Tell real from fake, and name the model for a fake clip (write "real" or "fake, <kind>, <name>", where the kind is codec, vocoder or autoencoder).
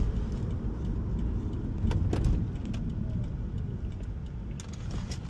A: real